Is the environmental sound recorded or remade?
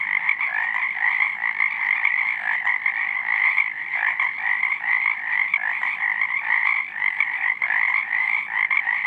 recorded